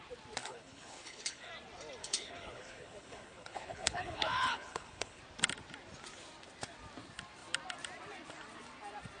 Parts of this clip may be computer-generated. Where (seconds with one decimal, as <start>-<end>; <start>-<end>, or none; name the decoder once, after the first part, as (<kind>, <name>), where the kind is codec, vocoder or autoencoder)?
0.4-1.5 (codec, HILCodec); 2.0-5.2